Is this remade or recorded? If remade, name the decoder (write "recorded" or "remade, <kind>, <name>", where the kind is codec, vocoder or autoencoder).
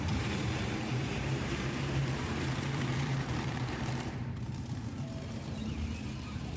remade, vocoder, BigVGAN v2